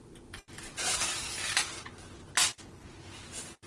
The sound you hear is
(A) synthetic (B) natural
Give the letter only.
B